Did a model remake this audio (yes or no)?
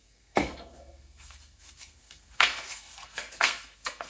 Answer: yes